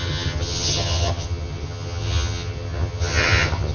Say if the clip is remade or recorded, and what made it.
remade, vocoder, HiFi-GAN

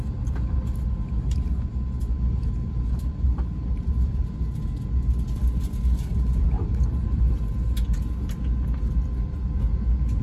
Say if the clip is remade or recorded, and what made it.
recorded